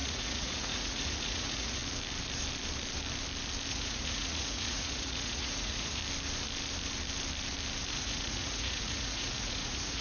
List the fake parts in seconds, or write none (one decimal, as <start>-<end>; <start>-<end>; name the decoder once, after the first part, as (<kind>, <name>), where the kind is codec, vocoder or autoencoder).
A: 0.0-1.8 (vocoder, Vocos); 3.7-6.0; 7.9-10.0